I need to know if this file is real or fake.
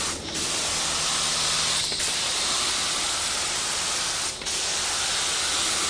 real